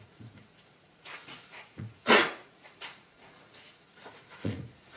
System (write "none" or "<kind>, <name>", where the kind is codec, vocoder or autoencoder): vocoder, Vocos